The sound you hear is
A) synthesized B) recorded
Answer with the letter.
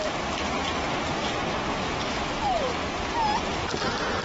B